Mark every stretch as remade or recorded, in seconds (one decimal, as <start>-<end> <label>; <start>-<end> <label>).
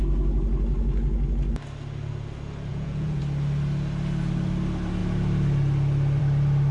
0.0-2.7 recorded; 2.7-3.2 remade; 3.2-6.7 recorded